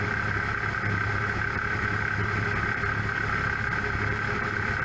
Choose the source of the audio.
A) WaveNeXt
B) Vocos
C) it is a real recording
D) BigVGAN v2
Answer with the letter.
C